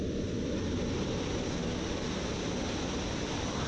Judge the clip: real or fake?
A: real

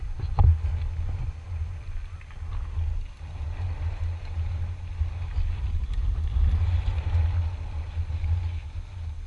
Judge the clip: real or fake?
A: real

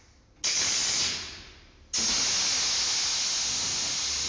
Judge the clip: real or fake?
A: real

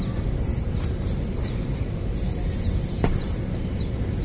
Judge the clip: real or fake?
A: real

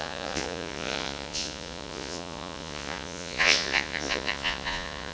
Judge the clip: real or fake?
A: fake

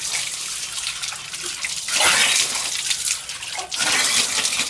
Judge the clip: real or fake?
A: real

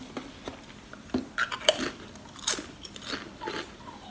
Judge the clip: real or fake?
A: real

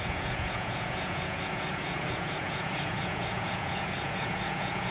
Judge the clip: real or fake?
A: fake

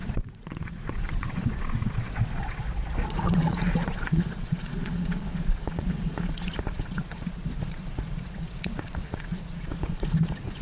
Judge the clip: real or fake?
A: fake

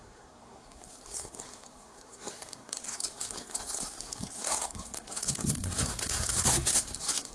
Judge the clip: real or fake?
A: fake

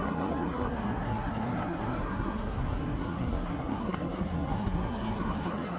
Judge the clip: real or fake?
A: fake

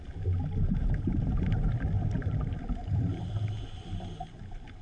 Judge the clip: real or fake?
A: real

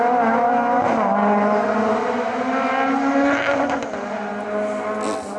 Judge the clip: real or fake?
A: real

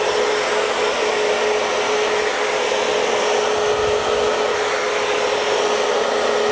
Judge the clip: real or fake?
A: real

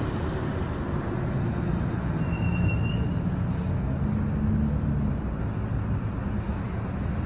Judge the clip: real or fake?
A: real